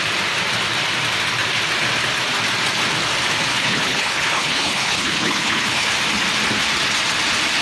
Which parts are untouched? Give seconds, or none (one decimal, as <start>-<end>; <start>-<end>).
0.0-3.5; 5.9-7.6